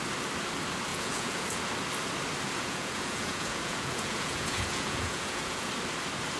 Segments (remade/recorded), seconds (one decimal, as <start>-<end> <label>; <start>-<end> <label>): 0.0-0.9 recorded; 0.9-1.6 remade; 1.6-2.6 recorded; 2.6-5.7 remade; 5.7-6.4 recorded